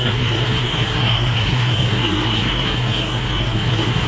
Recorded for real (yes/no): no